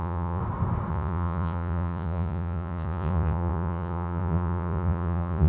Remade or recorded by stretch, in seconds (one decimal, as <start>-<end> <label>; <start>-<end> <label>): 0.0-0.4 remade; 0.4-0.9 recorded; 0.9-5.5 remade